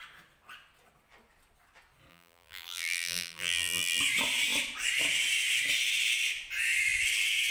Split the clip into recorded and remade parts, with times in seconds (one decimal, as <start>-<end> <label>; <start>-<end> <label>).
0.0-2.1 recorded; 2.1-4.0 remade; 4.0-7.5 recorded